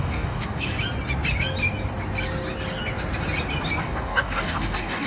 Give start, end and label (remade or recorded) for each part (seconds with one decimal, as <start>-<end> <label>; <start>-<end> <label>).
0.0-0.7 remade; 0.7-3.8 recorded; 3.8-5.1 remade